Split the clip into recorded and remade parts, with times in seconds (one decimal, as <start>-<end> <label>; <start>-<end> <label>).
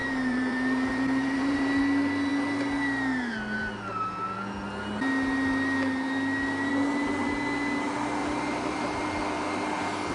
0.0-1.8 remade; 1.8-8.2 recorded; 8.2-9.0 remade; 9.0-10.1 recorded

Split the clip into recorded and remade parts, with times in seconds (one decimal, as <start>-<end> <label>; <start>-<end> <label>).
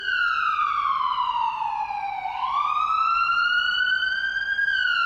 0.0-5.1 recorded